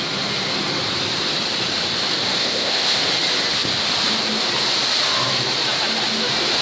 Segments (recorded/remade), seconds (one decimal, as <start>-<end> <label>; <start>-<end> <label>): 0.0-2.4 recorded; 2.4-3.0 remade; 3.0-6.6 recorded